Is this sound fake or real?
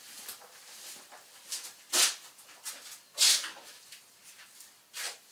fake